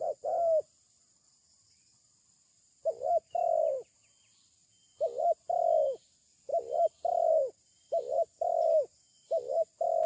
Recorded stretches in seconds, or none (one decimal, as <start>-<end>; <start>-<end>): 0.0-10.1